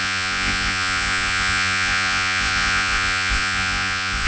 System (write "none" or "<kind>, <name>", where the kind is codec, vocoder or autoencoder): vocoder, Vocos